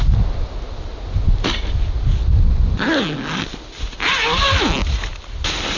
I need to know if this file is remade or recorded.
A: recorded